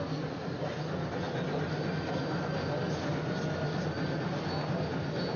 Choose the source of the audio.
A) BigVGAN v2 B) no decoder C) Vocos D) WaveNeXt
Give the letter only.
B